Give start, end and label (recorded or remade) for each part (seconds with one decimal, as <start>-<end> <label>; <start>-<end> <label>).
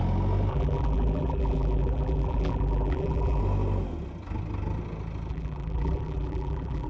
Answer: 0.0-0.5 recorded; 0.5-3.4 remade; 3.4-5.3 recorded; 5.3-6.9 remade